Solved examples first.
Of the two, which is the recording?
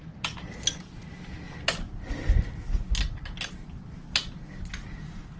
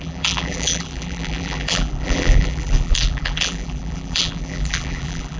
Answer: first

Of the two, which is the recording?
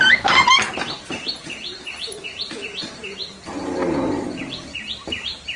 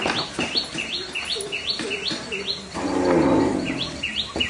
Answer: second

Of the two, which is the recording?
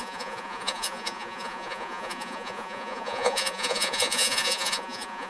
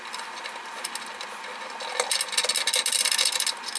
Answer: second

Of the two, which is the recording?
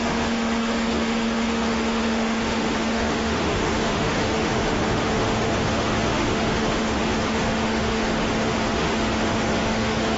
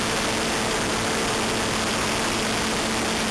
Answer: second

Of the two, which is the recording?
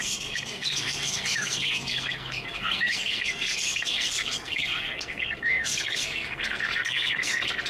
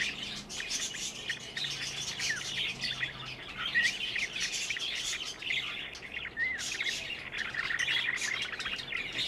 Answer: second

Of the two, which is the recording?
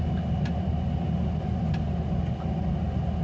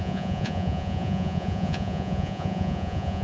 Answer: first